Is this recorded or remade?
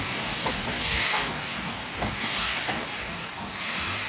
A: remade